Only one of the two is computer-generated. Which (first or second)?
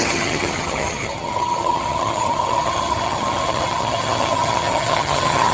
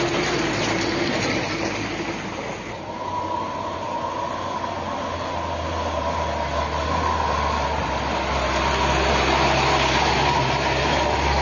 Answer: first